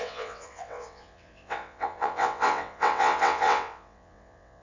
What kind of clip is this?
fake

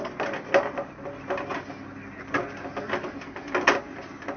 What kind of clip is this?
real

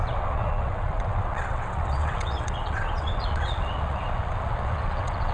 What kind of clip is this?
fake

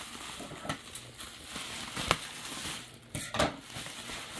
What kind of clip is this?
real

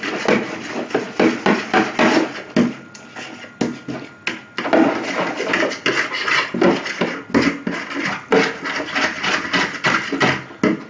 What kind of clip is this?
real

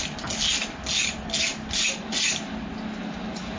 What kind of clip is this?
real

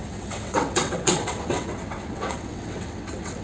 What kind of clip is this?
fake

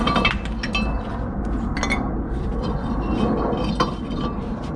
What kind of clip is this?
real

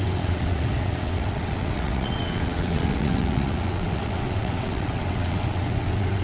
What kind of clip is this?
fake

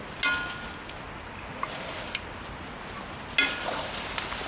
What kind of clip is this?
real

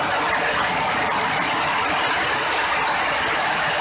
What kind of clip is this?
real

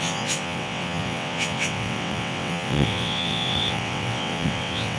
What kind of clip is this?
fake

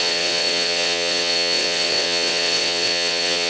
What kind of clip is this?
fake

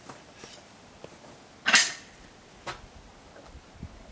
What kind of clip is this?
real